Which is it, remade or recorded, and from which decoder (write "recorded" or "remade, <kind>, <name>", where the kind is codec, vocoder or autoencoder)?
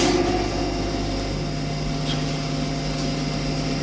recorded